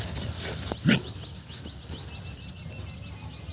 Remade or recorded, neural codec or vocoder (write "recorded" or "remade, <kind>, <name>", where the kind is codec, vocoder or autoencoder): recorded